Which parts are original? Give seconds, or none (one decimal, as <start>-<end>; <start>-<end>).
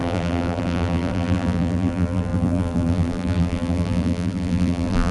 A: none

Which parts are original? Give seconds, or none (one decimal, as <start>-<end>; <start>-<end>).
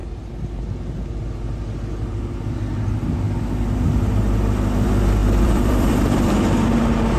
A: 0.0-5.2; 6.4-7.2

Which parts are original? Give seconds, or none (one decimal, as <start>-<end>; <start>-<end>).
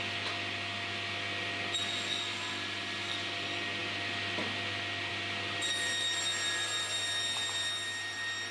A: 0.0-8.5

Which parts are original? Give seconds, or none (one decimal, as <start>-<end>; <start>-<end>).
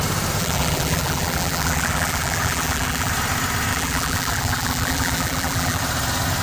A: 0.0-0.4; 3.1-3.7; 5.8-6.4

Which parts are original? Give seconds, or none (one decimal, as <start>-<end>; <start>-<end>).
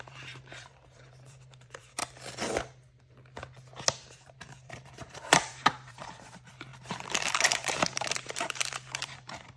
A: 2.0-3.9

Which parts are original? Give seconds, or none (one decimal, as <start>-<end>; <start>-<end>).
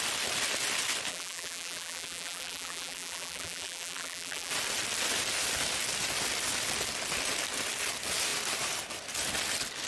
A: 0.0-1.1; 4.5-9.9